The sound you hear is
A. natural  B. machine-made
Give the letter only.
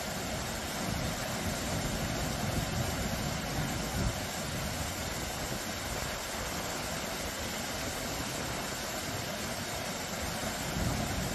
A